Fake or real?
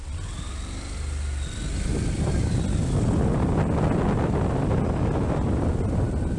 real